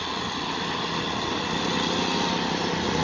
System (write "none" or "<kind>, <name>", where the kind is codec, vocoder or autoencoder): none